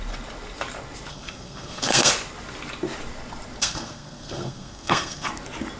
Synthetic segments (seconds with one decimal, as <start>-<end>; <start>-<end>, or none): 1.1-2.1; 3.6-5.3